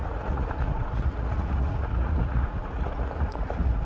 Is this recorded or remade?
remade